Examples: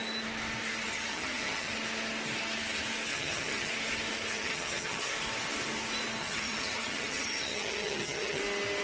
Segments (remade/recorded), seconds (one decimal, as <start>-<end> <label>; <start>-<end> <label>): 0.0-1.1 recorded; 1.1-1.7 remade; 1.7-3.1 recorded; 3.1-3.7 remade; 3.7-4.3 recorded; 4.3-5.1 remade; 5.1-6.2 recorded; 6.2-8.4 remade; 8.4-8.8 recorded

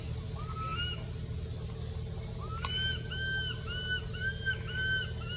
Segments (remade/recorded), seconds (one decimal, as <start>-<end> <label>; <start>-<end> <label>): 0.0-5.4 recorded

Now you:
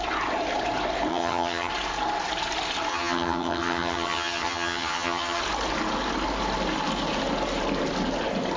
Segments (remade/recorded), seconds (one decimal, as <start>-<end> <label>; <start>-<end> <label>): 0.0-1.1 recorded; 1.1-1.7 remade; 1.7-2.9 recorded; 2.9-5.4 remade; 5.4-8.6 recorded

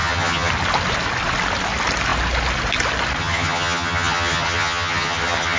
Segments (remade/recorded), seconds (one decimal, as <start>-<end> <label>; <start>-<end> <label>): 0.0-0.5 remade; 0.5-3.2 recorded; 3.2-5.6 remade

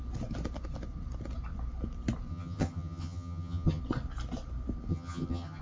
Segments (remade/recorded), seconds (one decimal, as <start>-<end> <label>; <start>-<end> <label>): 0.0-2.3 recorded; 2.3-3.8 remade; 3.8-4.9 recorded; 4.9-5.6 remade

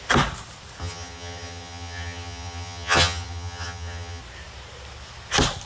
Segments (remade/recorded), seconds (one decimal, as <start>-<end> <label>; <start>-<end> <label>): 0.0-0.8 recorded; 0.8-4.2 remade; 4.2-5.7 recorded

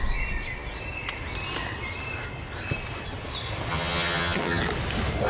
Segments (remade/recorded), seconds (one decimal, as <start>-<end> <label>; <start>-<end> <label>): 0.0-3.7 recorded; 3.7-4.6 remade; 4.6-5.3 recorded